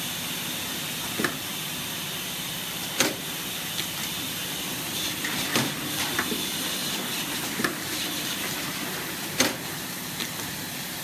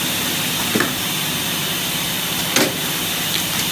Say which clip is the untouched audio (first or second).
second